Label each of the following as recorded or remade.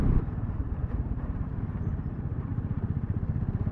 remade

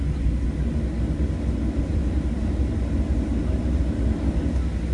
recorded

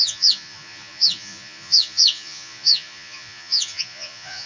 remade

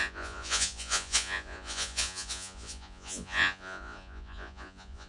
remade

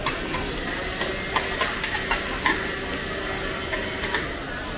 recorded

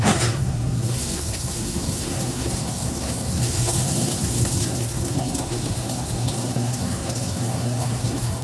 remade